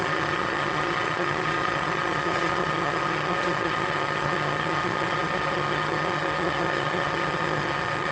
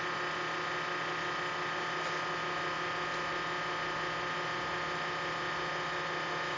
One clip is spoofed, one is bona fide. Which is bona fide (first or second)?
second